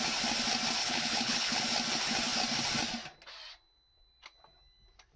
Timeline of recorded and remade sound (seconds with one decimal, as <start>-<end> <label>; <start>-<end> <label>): 0.0-0.8 recorded; 0.8-1.6 remade; 1.6-5.2 recorded